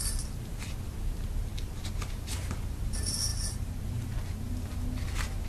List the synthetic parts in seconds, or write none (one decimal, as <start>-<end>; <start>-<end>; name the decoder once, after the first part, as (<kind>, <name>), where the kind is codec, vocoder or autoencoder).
none